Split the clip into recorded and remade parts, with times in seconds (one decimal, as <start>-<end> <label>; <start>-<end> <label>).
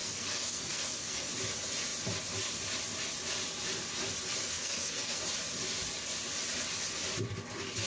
0.0-1.3 remade; 1.3-4.4 recorded; 4.4-5.2 remade; 5.2-7.9 recorded